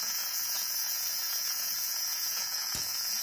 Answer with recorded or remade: remade